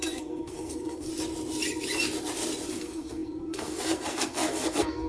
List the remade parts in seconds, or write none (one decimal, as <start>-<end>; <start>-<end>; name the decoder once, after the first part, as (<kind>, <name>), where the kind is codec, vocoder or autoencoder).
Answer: 0.0-1.1 (codec, SNAC); 2.7-5.1